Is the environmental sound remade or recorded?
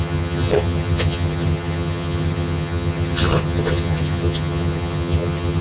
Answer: remade